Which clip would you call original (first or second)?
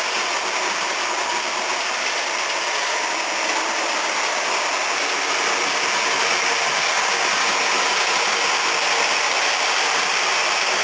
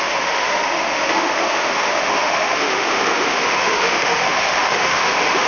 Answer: first